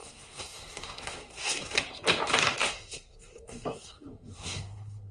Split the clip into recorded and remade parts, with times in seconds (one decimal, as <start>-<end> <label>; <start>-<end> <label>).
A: 0.0-1.8 remade; 1.8-2.6 recorded; 2.6-5.1 remade